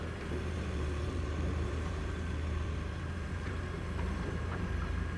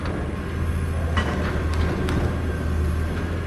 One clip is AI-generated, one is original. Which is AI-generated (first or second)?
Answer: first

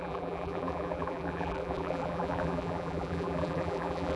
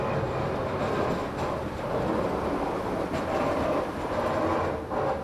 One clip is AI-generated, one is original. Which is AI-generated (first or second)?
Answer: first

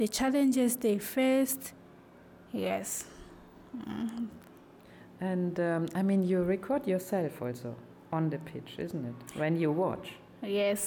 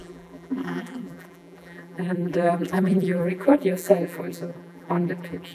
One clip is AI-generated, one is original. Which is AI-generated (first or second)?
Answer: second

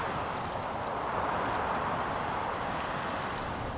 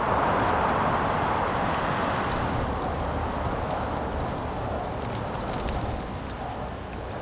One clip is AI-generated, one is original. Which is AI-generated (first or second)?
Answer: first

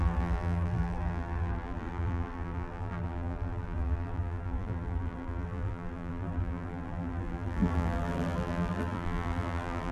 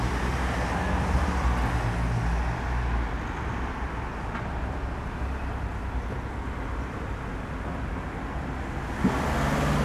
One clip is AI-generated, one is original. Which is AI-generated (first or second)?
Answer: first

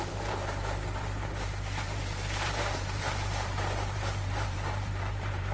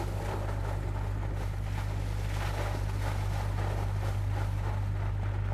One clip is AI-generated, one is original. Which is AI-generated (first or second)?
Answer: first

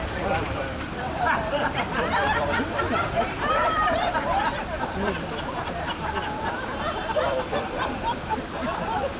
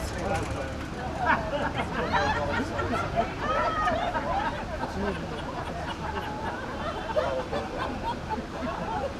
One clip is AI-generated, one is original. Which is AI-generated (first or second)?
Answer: first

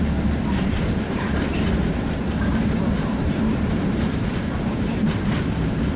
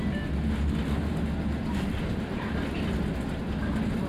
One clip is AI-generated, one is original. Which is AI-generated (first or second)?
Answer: first